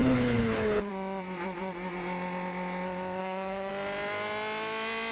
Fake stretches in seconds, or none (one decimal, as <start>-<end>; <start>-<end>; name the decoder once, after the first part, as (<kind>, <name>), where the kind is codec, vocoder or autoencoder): 0.0-0.9 (codec, HILCodec); 3.2-3.7